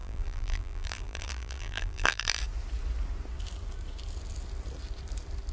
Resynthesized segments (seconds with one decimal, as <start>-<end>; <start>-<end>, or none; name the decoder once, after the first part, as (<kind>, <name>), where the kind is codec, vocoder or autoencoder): 0.0-2.4 (vocoder, BigVGAN v2)